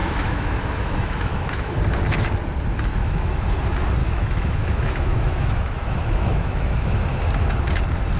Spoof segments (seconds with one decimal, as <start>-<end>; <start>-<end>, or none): 0.0-1.7; 3.0-3.6; 4.0-7.2